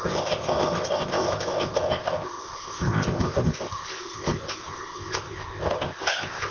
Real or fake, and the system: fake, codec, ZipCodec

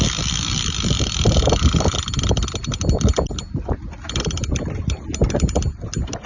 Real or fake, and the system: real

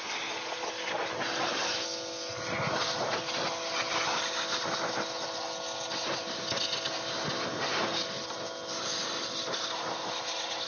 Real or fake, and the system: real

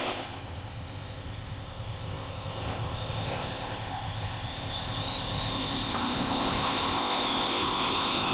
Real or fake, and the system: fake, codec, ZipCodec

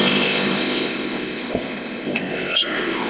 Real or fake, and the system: fake, codec, ZipCodec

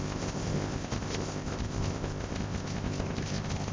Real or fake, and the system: fake, codec, ZipCodec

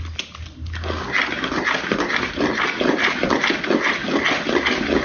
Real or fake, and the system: real